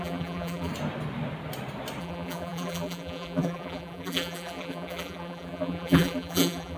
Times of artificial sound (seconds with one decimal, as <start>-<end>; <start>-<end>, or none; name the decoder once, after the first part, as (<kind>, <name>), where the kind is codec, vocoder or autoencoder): 0.0-0.7 (vocoder, BigVGAN v2); 2.0-6.8